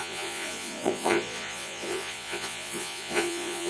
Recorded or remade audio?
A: remade